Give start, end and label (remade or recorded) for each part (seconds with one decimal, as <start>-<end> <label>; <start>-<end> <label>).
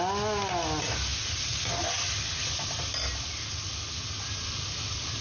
0.0-5.2 recorded